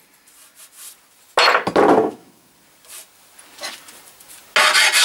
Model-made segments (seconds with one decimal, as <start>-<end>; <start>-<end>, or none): 2.0-2.5